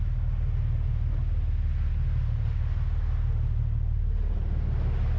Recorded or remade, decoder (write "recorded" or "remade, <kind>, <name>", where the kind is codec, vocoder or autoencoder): recorded